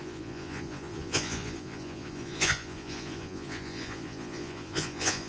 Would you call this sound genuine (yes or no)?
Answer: no